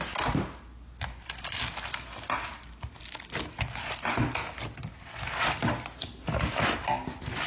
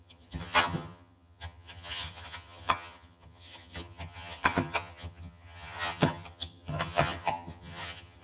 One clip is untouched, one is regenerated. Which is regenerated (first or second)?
second